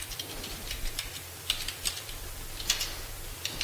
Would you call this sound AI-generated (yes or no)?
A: no